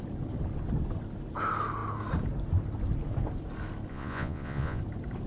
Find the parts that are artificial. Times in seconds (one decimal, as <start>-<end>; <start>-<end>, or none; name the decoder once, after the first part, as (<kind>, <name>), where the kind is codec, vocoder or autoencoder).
3.9-4.8 (vocoder, Vocos)